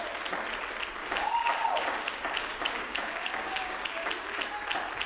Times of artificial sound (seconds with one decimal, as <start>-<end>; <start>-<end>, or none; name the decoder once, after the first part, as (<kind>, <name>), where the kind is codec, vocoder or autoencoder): 1.0-4.1 (codec, DAC)